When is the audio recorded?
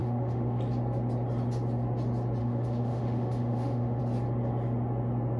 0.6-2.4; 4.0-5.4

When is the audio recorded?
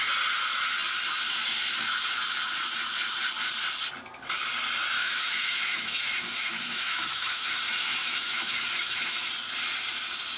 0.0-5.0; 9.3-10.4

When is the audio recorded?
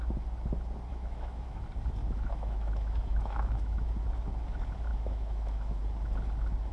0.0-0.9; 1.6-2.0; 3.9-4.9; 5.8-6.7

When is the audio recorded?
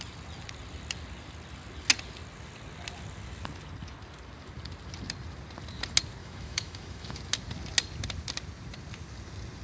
0.0-6.2; 7.2-9.6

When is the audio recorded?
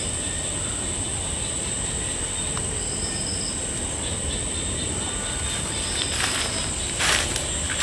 0.0-7.8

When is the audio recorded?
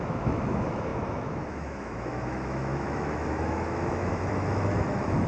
none